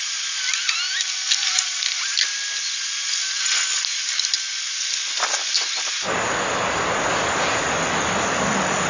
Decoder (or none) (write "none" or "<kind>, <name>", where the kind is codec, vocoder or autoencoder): none